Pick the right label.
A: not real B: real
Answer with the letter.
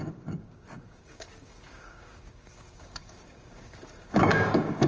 A